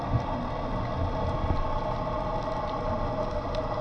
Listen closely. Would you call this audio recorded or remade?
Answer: recorded